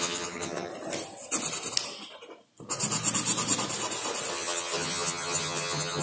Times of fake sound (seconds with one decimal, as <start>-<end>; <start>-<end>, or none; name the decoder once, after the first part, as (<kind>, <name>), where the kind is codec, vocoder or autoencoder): 0.0-0.7 (vocoder, HiFi-GAN); 4.3-6.0